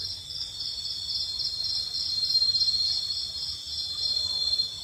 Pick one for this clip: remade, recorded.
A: recorded